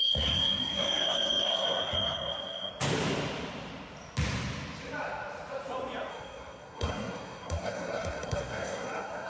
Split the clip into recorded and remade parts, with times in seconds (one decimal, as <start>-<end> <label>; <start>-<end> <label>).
0.0-2.7 remade; 2.7-6.1 recorded; 6.1-9.3 remade